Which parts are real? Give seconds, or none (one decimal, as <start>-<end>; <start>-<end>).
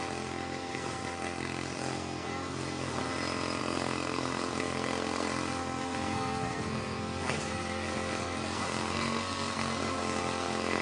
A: 3.0-3.6